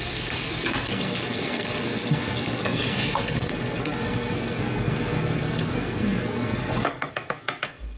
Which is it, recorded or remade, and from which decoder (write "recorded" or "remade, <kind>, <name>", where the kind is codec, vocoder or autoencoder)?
remade, codec, SNAC